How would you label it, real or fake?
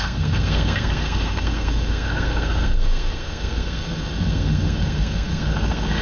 fake